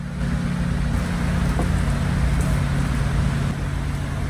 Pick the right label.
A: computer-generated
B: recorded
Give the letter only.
B